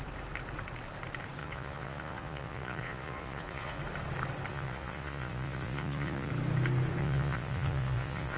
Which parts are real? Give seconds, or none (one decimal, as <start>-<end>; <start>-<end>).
0.0-1.4; 3.8-4.5; 6.3-7.0